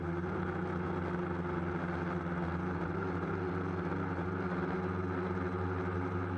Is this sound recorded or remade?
recorded